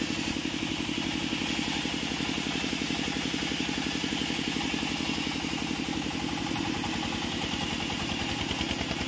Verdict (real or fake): real